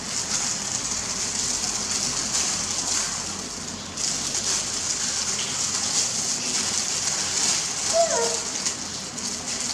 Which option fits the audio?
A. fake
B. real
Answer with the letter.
B